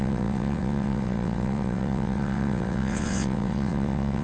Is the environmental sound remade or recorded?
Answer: remade